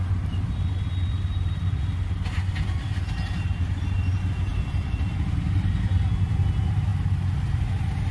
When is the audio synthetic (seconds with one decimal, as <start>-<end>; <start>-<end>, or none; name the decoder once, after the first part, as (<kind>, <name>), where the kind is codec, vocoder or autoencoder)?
none